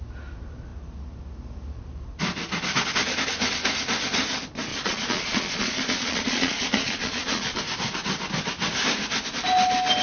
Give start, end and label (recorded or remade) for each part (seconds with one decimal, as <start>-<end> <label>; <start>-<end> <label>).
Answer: 0.0-4.7 recorded; 4.7-7.6 remade; 7.6-10.0 recorded